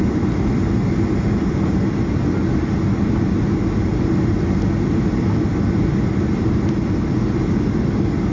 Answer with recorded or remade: recorded